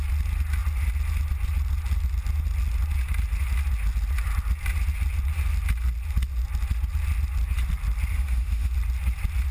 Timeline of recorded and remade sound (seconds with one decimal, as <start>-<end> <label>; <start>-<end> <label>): 0.0-8.1 recorded; 8.1-8.7 remade; 8.7-9.5 recorded